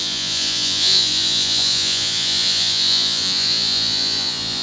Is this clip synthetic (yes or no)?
yes